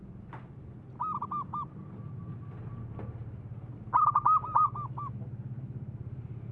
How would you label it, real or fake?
real